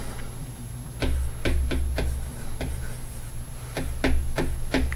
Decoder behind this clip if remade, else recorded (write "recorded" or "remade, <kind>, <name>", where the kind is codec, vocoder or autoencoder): recorded